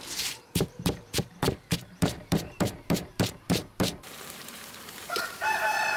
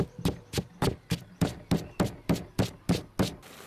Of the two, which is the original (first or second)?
second